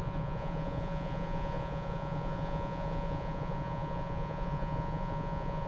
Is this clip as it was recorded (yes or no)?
no